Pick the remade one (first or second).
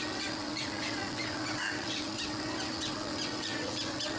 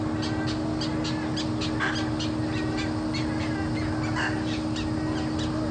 first